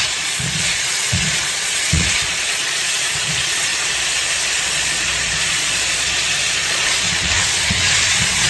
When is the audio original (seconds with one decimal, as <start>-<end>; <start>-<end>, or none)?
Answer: 3.7-4.6